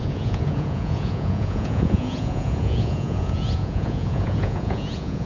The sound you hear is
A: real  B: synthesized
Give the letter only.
B